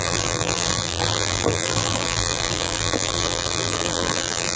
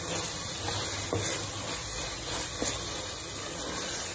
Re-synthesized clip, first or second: first